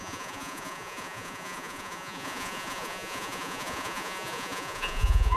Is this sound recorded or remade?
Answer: remade